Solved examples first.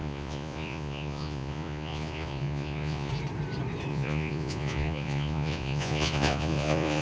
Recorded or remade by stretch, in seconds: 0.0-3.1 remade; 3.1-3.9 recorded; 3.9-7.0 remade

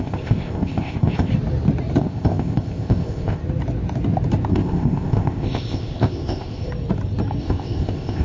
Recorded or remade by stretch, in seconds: 0.0-1.3 remade; 1.3-2.0 recorded; 2.0-3.4 remade; 3.4-4.5 recorded; 4.5-6.7 remade; 6.7-7.4 recorded; 7.4-8.2 remade

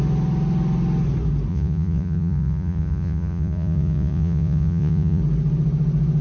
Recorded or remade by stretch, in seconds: 0.0-1.5 recorded; 1.5-5.2 remade; 5.2-6.2 recorded

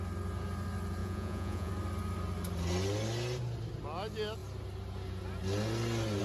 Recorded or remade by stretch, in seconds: 0.0-1.0 recorded; 1.0-1.7 remade; 1.7-6.2 recorded

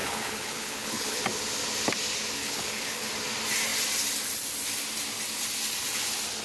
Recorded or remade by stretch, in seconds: 0.0-1.2 remade; 1.2-2.4 recorded; 2.4-3.1 remade; 3.1-6.4 recorded

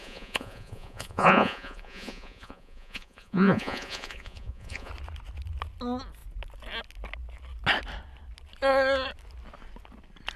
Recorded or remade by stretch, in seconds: 0.0-4.9 remade; 4.9-10.4 recorded

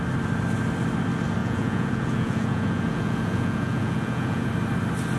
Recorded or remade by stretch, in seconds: 0.0-1.4 recorded; 1.4-4.5 remade; 4.5-5.2 recorded